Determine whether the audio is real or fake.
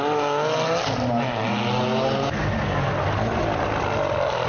real